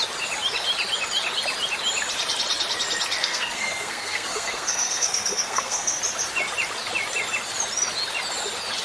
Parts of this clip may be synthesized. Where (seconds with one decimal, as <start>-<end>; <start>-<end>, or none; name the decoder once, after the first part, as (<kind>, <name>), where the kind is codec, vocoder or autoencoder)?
3.2-6.0 (codec, SNAC)